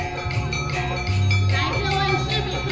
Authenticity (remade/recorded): recorded